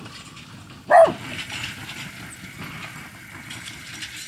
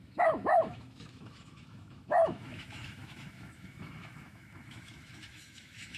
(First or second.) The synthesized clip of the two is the second